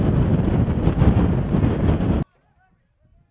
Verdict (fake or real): real